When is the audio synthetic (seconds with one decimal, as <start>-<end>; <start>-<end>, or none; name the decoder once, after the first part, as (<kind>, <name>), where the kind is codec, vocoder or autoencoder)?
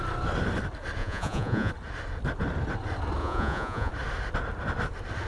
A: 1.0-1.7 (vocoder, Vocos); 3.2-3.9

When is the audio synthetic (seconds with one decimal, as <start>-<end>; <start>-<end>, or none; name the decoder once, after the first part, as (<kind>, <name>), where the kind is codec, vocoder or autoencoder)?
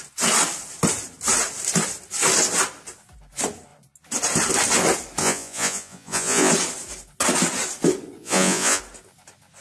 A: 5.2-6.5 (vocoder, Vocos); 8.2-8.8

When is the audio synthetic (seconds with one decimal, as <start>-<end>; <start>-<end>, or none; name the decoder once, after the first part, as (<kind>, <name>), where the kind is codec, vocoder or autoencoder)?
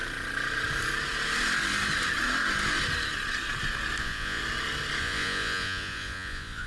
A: 4.0-4.4 (vocoder, Vocos); 5.0-6.7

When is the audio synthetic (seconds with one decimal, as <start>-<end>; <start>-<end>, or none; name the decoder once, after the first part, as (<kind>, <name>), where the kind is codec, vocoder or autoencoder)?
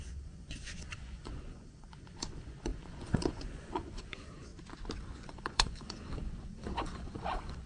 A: 0.0-4.5 (vocoder, Vocos); 5.0-7.7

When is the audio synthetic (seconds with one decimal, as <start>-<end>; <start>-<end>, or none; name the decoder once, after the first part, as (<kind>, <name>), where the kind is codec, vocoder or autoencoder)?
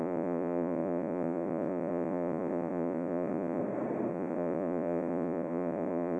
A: 0.0-3.6 (vocoder, Vocos); 4.1-6.2